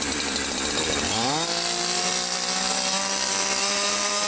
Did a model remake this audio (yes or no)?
no